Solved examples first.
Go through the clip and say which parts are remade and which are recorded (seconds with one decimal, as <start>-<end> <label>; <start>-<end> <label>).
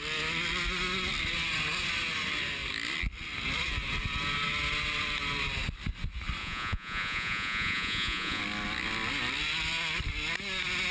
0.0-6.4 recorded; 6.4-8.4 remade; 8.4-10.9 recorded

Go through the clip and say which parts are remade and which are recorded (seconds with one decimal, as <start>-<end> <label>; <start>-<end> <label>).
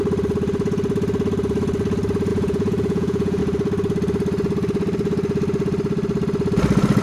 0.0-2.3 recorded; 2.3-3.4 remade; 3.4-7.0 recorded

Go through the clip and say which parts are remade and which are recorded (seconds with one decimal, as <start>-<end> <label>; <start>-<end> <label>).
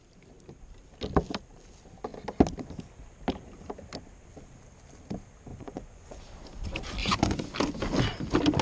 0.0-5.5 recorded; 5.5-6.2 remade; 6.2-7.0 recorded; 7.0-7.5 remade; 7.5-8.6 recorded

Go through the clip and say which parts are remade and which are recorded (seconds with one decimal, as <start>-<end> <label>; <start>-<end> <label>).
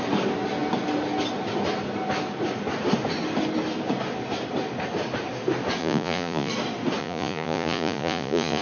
0.0-5.8 recorded; 5.8-6.5 remade; 6.5-7.0 recorded; 7.0-8.6 remade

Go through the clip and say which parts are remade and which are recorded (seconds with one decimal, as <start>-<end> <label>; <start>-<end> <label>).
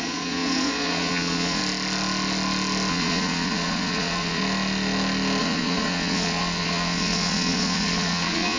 0.0-1.6 remade; 1.6-2.9 recorded; 2.9-4.4 remade; 4.4-5.4 recorded; 5.4-8.6 remade